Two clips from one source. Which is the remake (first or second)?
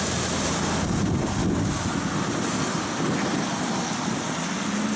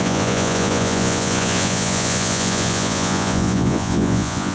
second